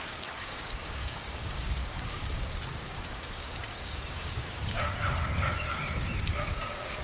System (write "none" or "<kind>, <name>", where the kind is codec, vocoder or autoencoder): codec, DAC